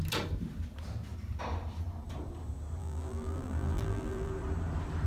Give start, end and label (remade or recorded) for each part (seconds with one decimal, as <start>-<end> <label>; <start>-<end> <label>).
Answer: 0.0-2.8 recorded; 2.8-4.3 remade; 4.3-5.1 recorded